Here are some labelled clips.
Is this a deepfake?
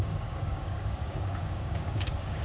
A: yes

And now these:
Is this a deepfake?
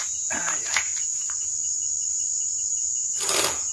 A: no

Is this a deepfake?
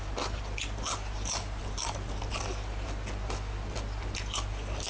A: no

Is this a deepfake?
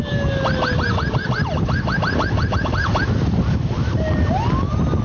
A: no